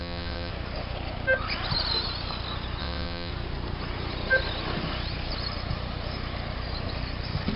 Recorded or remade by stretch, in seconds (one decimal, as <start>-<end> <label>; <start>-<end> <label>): 0.0-0.5 remade; 0.5-2.8 recorded; 2.8-3.3 remade; 3.3-7.6 recorded